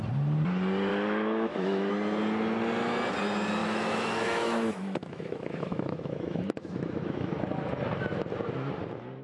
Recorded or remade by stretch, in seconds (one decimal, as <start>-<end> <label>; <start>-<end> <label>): 0.0-0.9 recorded; 0.9-1.9 remade; 1.9-3.6 recorded; 3.6-7.3 remade; 7.3-9.2 recorded